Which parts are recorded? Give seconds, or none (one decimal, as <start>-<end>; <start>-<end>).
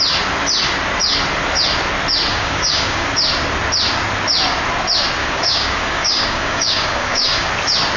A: 0.0-2.3; 3.1-5.2; 7.5-8.0